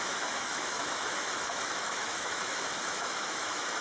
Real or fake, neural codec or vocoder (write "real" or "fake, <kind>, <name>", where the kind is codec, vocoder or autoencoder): fake, autoencoder, DAC-VAE